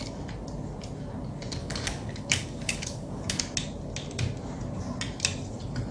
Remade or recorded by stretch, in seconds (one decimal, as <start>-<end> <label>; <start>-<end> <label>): 0.0-1.6 recorded; 1.6-3.4 remade; 3.4-5.9 recorded